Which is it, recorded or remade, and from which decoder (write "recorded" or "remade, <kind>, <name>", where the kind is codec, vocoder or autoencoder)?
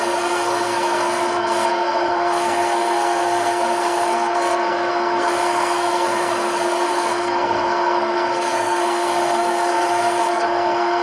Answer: remade, codec, SNAC